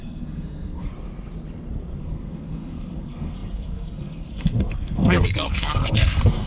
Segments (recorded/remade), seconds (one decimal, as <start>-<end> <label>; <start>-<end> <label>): 0.0-0.9 remade; 0.9-2.0 recorded; 2.0-6.5 remade